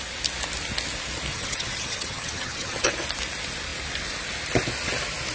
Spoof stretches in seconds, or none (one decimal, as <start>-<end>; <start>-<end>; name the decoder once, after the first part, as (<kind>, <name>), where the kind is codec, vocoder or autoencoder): 1.3-2.9 (vocoder, HiFi-GAN)